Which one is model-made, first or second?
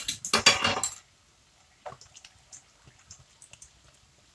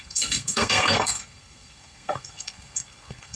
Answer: second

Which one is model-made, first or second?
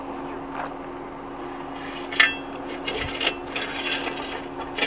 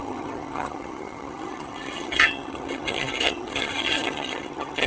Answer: second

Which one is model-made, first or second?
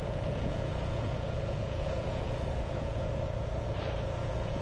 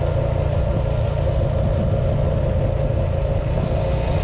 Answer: first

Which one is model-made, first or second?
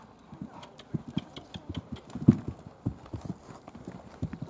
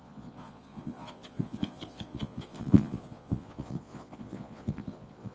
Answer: second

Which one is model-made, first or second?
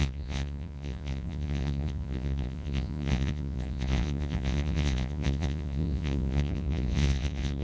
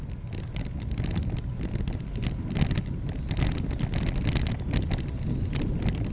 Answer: first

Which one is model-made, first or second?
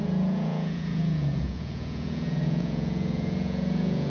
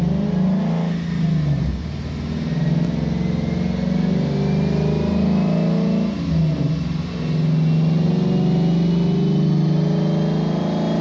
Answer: first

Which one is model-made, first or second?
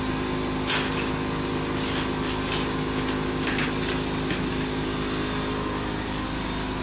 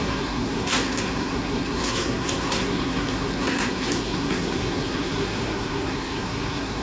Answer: second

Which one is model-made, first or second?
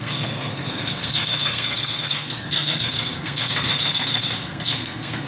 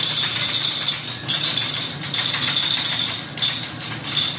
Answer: first